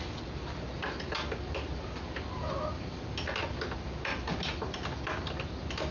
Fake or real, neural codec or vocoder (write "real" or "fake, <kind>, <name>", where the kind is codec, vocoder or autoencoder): real